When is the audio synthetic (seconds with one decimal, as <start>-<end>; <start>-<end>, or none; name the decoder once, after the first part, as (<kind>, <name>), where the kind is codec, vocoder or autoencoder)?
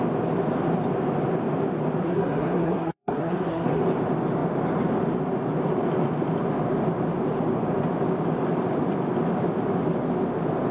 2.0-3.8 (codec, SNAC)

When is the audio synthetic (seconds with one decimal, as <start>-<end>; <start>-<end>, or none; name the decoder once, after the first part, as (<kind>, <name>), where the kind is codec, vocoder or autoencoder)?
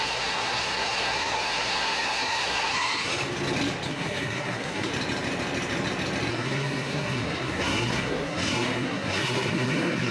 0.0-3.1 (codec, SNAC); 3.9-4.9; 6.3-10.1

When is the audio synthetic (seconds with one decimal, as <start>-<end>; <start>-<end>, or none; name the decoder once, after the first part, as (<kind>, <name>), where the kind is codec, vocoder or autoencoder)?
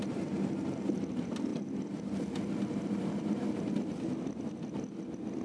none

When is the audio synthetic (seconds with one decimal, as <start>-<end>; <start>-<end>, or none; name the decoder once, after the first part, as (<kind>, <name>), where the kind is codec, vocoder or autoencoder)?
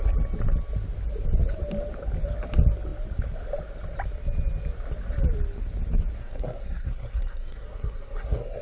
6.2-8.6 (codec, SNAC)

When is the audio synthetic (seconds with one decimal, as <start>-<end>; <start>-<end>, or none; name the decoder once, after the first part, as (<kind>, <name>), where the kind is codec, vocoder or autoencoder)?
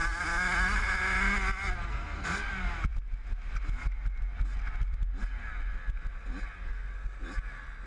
1.9-2.5 (codec, SNAC)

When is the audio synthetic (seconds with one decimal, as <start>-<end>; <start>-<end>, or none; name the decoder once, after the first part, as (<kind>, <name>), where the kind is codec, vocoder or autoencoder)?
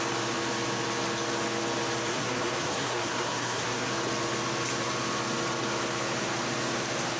2.1-3.9 (codec, SNAC)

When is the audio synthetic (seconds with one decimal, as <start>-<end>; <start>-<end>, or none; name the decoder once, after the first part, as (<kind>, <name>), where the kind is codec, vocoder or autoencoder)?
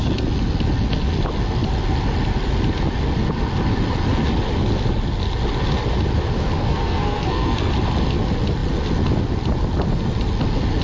6.6-7.7 (codec, SNAC)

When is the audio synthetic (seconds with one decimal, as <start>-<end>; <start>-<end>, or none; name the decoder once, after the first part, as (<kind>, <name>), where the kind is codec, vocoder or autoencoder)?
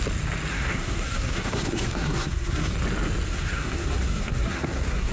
0.5-2.7 (codec, SNAC); 3.3-5.1